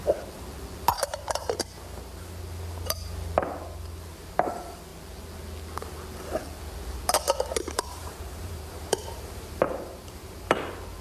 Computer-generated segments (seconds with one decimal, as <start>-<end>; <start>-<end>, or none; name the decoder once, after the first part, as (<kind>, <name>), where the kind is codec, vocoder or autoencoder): 8.0-10.6 (vocoder, BigVGAN v2)